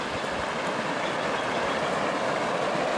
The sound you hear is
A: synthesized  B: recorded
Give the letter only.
B